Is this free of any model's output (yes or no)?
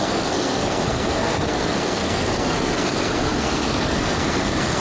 no